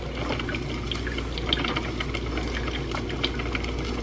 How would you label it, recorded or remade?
recorded